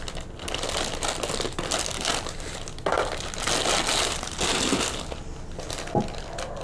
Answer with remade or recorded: recorded